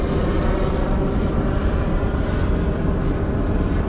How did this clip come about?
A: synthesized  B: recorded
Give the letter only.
B